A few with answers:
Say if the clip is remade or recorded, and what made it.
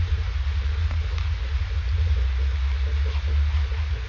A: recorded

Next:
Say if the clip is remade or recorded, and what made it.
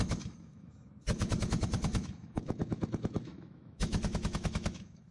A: remade, autoencoder, DAC-VAE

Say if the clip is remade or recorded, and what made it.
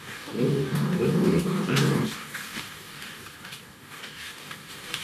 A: remade, codec, DAC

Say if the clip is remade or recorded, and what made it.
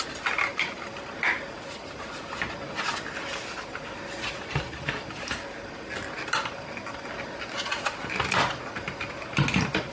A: recorded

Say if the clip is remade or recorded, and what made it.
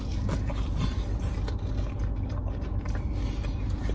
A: recorded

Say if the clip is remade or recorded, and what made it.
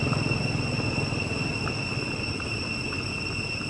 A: recorded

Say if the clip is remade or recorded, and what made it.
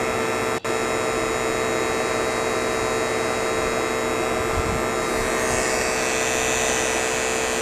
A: recorded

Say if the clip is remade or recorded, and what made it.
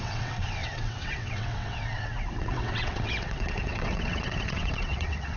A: remade, vocoder, WaveNeXt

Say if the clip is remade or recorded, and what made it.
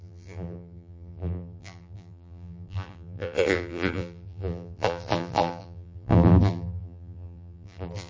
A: remade, vocoder, BigVGAN v2